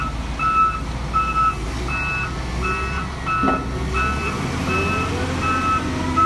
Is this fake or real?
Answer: real